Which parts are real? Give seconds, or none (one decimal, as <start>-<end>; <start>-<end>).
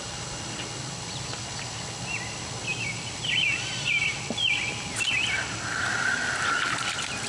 0.0-2.7; 3.4-7.3